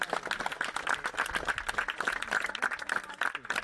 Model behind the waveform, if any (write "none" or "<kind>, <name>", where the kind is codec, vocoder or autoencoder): none